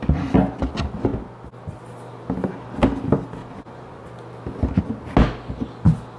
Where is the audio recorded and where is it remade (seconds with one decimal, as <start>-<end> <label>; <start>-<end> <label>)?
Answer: 0.0-3.4 recorded; 3.4-4.0 remade; 4.0-6.2 recorded